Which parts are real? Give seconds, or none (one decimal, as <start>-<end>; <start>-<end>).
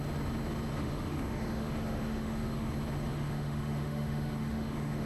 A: 0.0-0.8; 2.7-3.1